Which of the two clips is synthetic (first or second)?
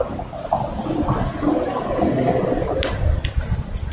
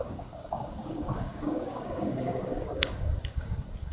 second